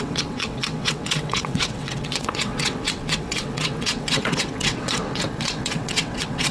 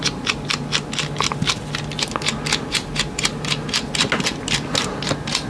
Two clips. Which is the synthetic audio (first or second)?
first